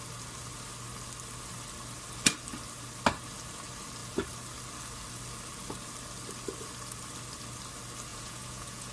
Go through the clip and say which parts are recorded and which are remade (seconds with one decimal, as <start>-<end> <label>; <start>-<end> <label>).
0.0-8.1 recorded; 8.1-8.9 remade